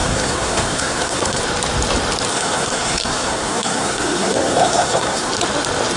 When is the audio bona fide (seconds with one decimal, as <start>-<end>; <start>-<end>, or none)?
1.4-2.3; 5.3-6.0

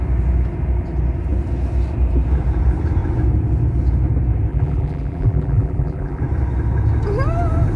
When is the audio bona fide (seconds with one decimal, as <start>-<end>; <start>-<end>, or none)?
0.0-4.5; 6.2-7.8

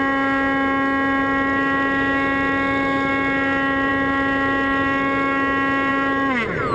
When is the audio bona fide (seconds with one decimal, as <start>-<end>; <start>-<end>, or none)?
0.0-6.7